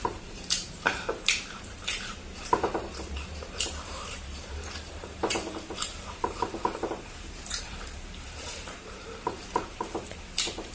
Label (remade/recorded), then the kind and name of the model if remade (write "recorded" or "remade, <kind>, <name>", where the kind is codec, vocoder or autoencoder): remade, vocoder, BigVGAN v2